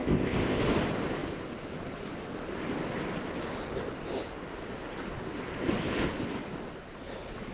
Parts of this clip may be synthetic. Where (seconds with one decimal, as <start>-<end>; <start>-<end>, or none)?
0.0-0.6